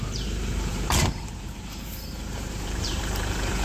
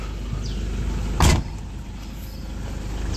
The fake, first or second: first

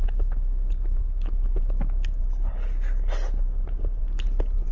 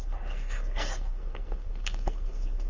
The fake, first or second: second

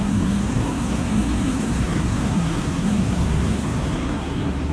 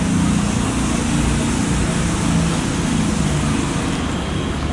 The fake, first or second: first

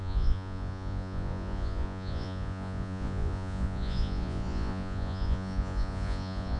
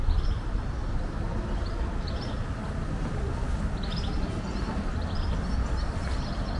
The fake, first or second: first